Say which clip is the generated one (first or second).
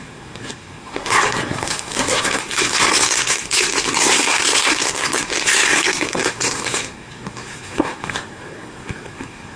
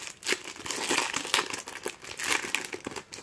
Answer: first